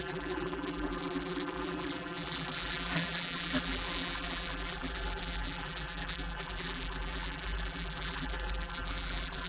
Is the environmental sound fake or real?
fake